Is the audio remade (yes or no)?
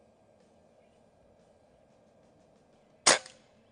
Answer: no